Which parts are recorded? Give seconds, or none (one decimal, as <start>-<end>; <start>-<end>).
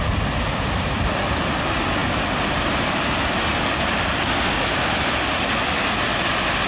0.0-6.7